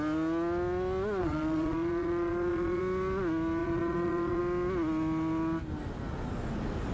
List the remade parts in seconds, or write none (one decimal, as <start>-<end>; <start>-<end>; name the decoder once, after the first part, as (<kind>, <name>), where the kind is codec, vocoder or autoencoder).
1.2-2.8 (vocoder, Vocos); 3.6-4.4